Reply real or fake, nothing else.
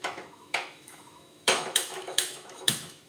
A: fake